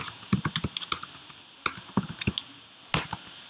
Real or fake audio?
real